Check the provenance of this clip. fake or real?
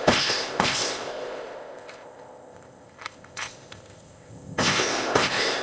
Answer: fake